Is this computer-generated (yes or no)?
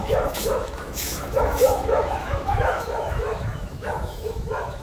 yes